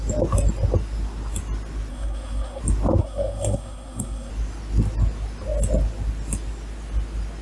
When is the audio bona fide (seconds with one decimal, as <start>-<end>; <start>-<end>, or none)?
0.0-1.9; 2.6-3.0; 4.3-7.4

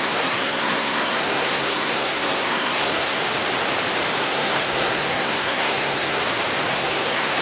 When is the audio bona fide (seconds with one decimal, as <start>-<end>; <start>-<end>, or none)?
3.2-4.2; 6.2-6.7